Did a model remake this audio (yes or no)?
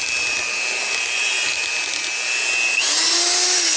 no